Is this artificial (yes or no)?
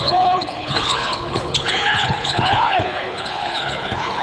yes